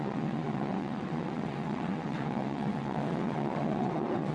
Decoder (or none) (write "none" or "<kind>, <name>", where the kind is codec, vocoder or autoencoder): vocoder, WaveNeXt